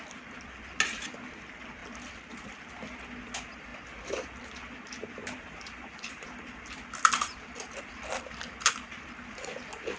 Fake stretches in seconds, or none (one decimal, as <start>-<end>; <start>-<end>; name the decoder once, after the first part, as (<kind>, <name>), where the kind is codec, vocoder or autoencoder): 5.2-6.6 (vocoder, BigVGAN v2)